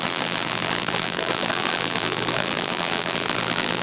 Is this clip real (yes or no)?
no